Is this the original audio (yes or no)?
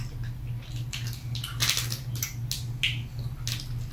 yes